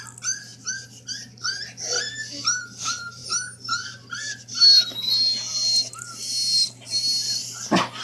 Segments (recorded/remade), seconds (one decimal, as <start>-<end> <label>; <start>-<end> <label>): 0.0-8.0 recorded